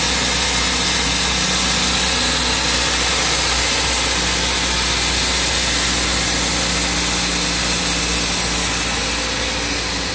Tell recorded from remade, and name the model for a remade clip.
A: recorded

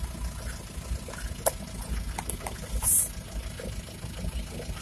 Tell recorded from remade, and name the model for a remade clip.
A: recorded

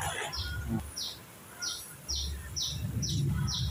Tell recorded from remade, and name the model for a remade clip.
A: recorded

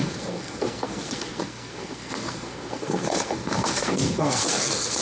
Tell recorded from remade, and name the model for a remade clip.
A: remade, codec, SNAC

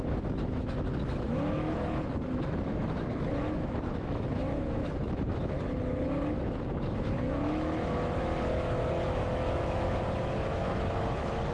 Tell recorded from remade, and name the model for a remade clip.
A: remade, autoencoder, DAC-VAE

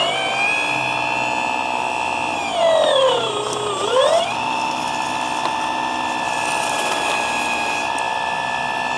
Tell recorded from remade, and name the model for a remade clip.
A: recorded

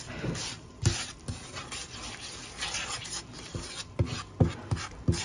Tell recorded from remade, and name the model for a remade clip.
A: recorded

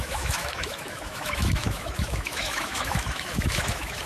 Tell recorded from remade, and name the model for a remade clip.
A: remade, autoencoder, DAC-VAE